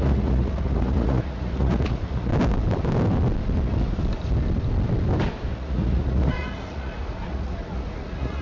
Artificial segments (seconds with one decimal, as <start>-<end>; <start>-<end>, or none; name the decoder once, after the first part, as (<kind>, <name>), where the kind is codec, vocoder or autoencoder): 0.0-2.3 (vocoder, Vocos); 5.5-8.4